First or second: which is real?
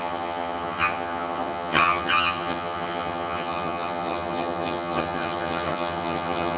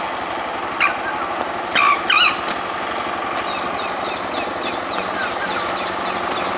second